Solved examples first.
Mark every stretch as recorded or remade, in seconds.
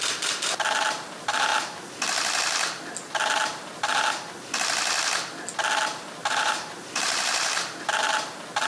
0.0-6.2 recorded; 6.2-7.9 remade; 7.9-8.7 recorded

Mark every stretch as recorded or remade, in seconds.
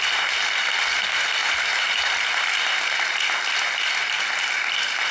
0.0-5.1 recorded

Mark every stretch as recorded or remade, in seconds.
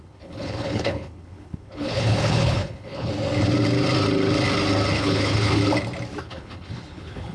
0.0-3.1 remade; 3.1-4.9 recorded; 4.9-5.6 remade; 5.6-6.2 recorded; 6.2-7.3 remade